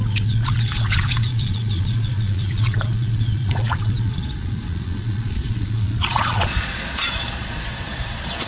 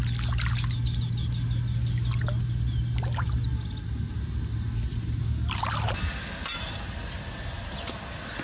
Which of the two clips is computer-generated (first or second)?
first